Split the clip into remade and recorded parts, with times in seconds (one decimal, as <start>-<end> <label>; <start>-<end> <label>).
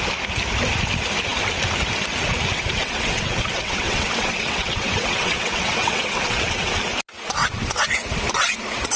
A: 0.0-2.5 recorded; 2.5-6.8 remade; 6.8-7.4 recorded; 7.4-8.2 remade; 8.2-9.0 recorded